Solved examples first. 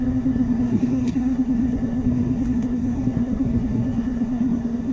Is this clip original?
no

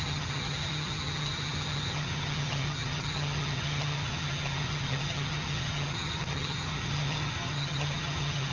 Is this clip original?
no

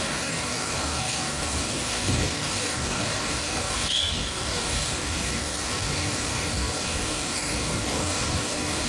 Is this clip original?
no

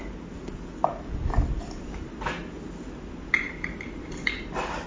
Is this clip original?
yes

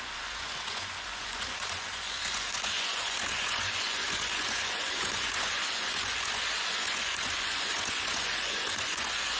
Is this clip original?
no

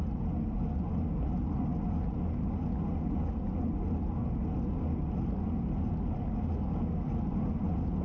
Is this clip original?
yes